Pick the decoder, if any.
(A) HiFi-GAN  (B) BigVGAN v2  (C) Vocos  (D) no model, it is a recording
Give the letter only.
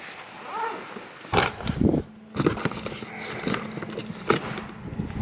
D